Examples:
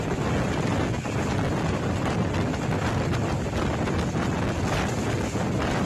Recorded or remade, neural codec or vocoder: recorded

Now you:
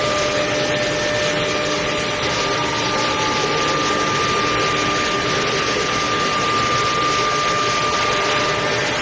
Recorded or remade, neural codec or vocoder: recorded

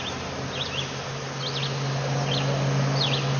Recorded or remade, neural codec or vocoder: recorded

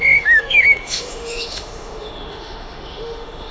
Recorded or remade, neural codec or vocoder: remade, autoencoder, DAC-VAE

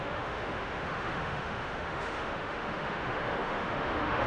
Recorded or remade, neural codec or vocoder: remade, autoencoder, DAC-VAE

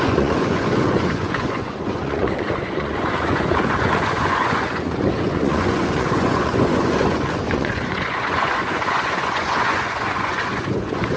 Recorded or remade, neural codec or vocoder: remade, vocoder, Vocos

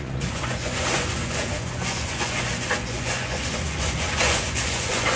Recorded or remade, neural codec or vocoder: remade, vocoder, Vocos